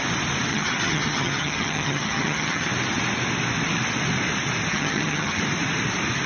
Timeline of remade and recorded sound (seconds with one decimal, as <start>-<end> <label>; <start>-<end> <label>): 0.0-0.5 recorded; 0.5-2.7 remade; 2.7-4.7 recorded; 4.7-5.4 remade; 5.4-6.3 recorded